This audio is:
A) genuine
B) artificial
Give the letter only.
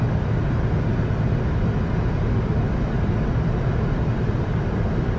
A